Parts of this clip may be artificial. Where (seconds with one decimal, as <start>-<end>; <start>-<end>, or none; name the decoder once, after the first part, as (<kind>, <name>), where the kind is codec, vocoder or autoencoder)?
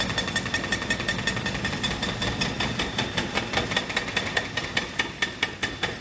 none